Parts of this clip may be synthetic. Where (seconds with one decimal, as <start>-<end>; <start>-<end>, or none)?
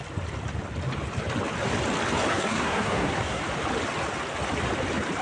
2.3-3.4